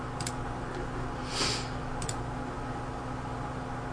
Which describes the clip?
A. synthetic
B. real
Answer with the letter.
B